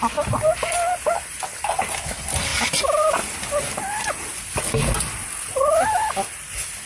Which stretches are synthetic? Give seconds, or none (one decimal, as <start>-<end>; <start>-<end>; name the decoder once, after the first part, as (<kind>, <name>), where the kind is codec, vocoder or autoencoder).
none